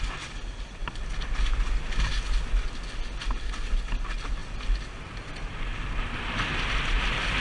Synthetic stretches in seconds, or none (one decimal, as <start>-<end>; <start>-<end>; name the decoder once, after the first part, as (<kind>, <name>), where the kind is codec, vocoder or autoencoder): none